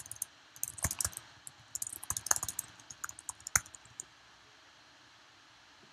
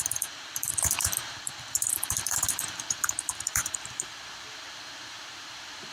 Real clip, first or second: first